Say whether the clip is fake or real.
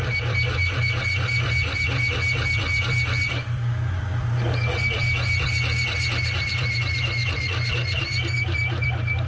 real